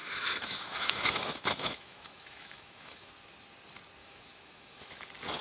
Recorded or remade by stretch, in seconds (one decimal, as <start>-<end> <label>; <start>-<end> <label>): 0.0-3.1 remade; 3.1-4.0 recorded; 4.0-5.0 remade; 5.0-5.4 recorded